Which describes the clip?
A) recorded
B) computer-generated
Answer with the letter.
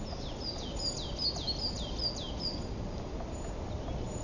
A